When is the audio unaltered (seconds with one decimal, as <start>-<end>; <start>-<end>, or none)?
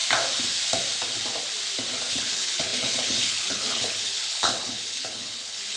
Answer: 0.0-2.1